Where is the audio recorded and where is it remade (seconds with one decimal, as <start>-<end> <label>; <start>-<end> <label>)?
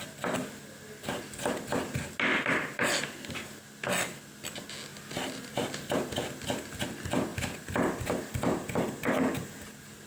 0.0-2.3 recorded; 2.3-4.4 remade; 4.4-4.9 recorded; 4.9-6.4 remade; 6.4-10.1 recorded